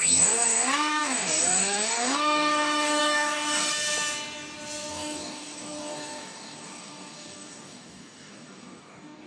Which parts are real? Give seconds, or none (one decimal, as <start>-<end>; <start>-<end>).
3.7-4.9